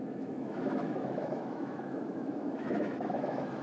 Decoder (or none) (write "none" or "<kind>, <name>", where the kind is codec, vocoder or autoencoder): autoencoder, DAC-VAE